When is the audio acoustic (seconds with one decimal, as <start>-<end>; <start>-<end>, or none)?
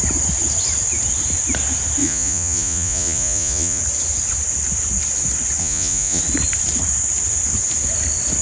0.0-2.0; 3.8-5.6; 6.2-8.4